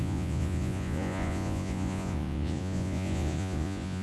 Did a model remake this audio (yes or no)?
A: yes